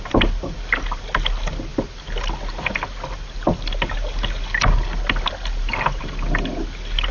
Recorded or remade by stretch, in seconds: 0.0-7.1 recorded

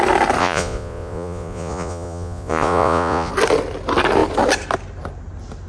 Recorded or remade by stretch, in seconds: 0.0-0.4 recorded; 0.4-3.3 remade; 3.3-5.7 recorded

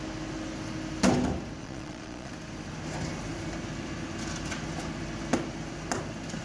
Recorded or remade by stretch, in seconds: 0.0-1.6 recorded; 1.6-2.3 remade; 2.3-6.4 recorded

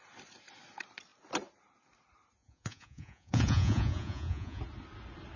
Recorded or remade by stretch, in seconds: 0.0-2.4 recorded; 2.4-4.6 remade; 4.6-5.4 recorded